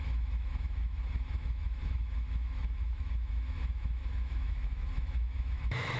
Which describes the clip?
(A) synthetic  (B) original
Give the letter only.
A